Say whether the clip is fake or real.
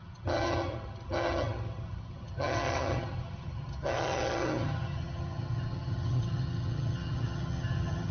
fake